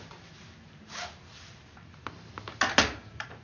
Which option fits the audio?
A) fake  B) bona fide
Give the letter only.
B